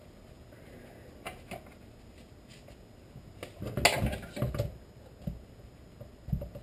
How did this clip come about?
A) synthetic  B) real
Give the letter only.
B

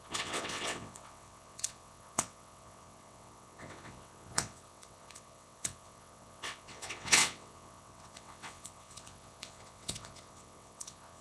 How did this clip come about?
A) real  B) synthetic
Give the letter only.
B